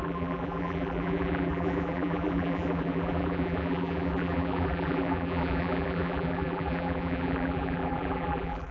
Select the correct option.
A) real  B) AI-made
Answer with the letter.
B